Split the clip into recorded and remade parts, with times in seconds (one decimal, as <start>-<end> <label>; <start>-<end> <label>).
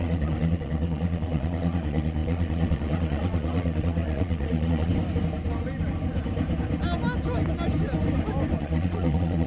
0.0-4.9 remade; 4.9-8.6 recorded; 8.6-9.5 remade